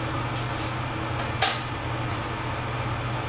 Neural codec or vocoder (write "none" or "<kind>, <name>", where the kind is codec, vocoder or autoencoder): none